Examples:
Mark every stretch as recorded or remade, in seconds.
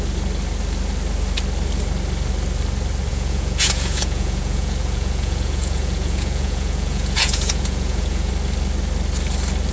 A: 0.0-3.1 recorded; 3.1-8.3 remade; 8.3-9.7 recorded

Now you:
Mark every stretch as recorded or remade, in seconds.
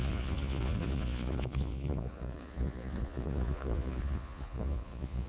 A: 0.0-5.3 remade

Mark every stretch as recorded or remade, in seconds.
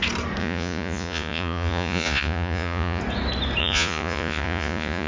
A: 0.0-0.4 recorded; 0.4-3.0 remade; 3.0-3.6 recorded; 3.6-5.1 remade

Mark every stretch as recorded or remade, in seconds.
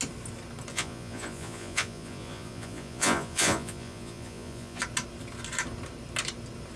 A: 0.0-0.7 recorded; 0.7-4.8 remade; 4.8-6.8 recorded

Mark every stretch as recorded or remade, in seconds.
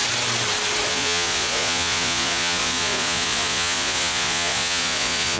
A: 0.0-0.9 recorded; 0.9-5.4 remade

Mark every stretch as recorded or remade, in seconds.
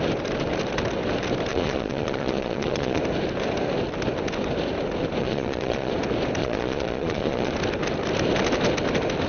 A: 0.0-1.5 recorded; 1.5-3.0 remade; 3.0-5.2 recorded; 5.2-5.9 remade; 5.9-6.4 recorded; 6.4-7.5 remade; 7.5-9.3 recorded